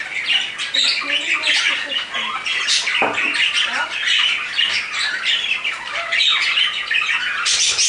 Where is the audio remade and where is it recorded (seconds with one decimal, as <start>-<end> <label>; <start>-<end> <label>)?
0.0-7.9 recorded